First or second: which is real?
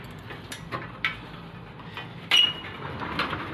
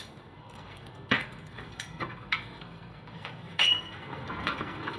first